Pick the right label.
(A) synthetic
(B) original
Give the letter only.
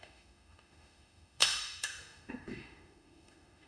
A